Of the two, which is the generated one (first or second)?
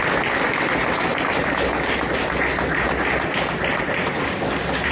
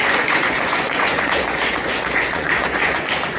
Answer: second